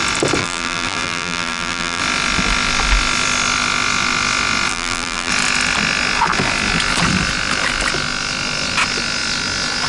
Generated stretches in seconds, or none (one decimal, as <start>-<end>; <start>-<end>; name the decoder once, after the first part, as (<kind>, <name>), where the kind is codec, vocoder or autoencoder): 0.4-2.0 (vocoder, BigVGAN v2); 4.7-5.3